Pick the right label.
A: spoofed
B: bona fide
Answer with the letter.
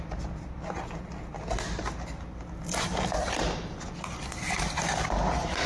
B